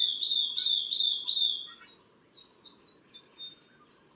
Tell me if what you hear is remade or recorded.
recorded